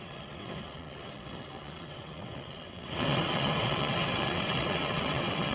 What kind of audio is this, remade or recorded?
remade